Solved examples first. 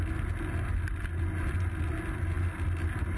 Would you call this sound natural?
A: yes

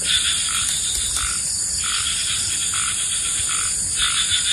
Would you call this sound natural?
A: yes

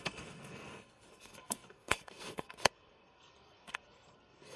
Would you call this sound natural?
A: no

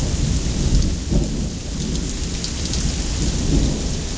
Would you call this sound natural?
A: yes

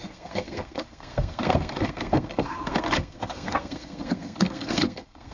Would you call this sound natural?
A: no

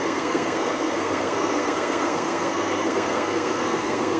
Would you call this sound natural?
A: no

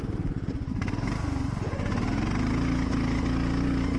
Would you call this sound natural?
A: yes